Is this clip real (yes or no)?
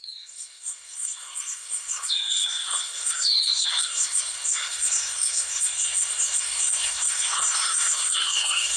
no